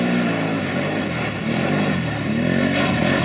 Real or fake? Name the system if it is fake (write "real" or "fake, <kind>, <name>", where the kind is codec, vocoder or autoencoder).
real